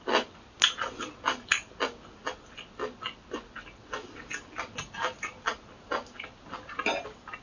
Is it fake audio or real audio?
real